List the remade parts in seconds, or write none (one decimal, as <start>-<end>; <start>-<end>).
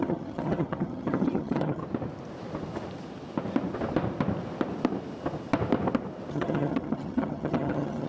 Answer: 0.0-1.8; 6.3-8.1